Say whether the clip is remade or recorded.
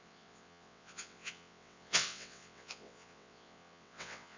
remade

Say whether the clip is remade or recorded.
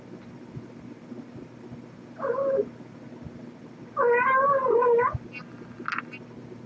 recorded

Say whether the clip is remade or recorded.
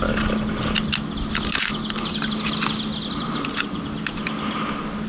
recorded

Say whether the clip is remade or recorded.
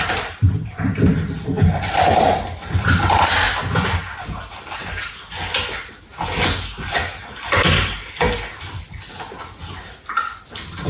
recorded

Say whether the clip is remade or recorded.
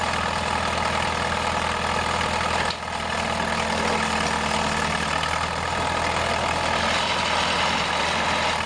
recorded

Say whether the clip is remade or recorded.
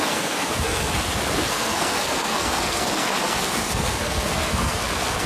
remade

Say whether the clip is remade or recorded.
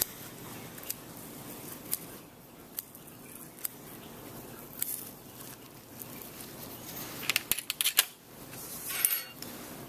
recorded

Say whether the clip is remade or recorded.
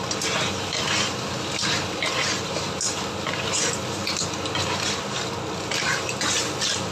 recorded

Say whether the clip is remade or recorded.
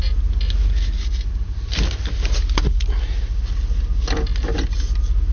recorded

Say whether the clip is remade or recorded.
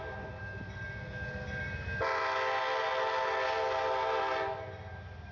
recorded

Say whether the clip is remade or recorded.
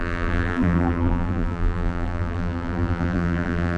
remade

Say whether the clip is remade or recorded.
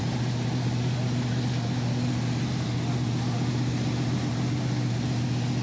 recorded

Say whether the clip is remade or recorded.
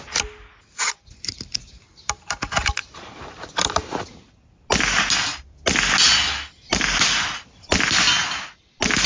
recorded